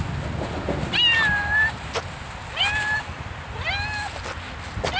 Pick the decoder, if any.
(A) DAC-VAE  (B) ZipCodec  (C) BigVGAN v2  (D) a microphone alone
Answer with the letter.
D